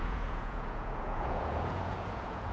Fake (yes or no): yes